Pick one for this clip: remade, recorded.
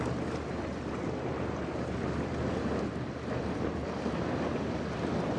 remade